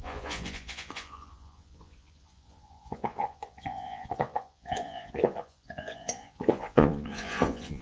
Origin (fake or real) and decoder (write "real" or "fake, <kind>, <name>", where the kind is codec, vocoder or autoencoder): fake, vocoder, Vocos